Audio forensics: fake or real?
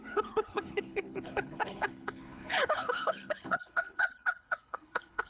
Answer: fake